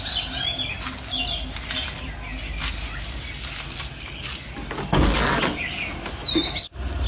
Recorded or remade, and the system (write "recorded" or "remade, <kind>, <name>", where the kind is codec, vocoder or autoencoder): recorded